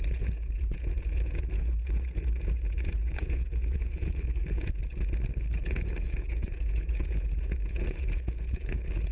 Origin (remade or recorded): remade